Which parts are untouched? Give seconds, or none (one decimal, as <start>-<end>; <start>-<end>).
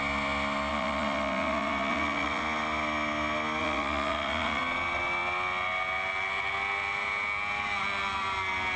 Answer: 0.0-0.7; 2.4-3.6; 4.6-8.8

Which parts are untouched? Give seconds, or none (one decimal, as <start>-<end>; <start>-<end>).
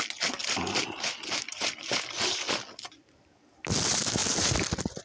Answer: 0.0-5.0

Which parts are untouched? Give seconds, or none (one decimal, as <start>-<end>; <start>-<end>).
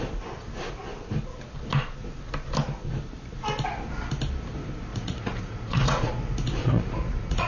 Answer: 0.0-4.9; 6.1-6.6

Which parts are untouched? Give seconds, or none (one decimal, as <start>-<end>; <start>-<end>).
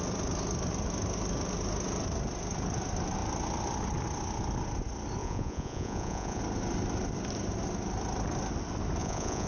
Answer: 0.0-5.2; 6.4-9.0